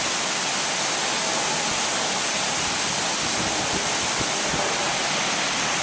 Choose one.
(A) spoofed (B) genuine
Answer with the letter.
B